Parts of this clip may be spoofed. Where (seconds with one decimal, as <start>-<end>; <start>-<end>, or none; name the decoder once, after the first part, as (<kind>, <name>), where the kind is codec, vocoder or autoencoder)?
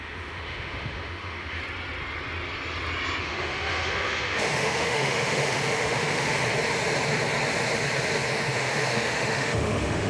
0.0-1.6 (autoencoder, DAC-VAE); 3.2-6.3; 8.3-10.1